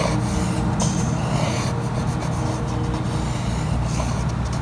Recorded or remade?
recorded